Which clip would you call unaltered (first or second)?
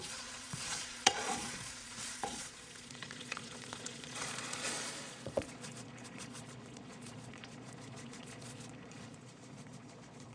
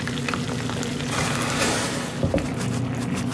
second